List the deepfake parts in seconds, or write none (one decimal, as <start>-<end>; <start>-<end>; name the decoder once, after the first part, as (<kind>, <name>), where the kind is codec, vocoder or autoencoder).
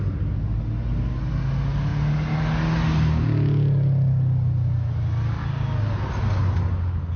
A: none